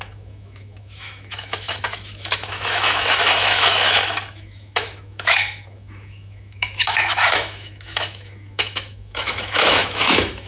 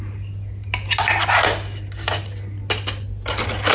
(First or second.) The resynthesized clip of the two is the first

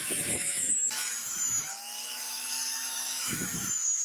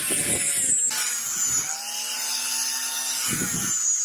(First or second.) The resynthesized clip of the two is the first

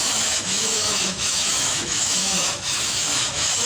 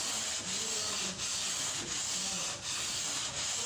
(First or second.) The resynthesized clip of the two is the first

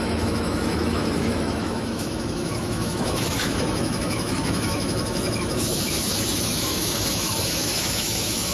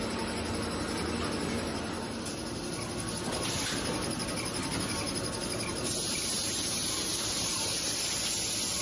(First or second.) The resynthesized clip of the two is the first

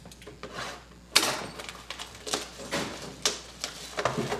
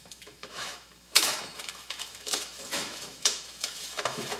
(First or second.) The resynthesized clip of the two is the second